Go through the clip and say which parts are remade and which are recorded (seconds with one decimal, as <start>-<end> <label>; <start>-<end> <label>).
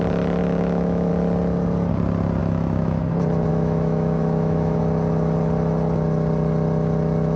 0.0-0.4 recorded; 0.4-1.1 remade; 1.1-2.4 recorded; 2.4-3.1 remade; 3.1-3.5 recorded; 3.5-4.8 remade; 4.8-7.4 recorded